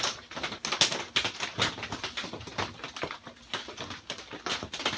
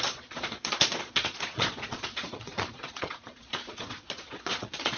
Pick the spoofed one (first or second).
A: second